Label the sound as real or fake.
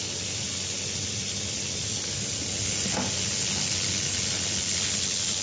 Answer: real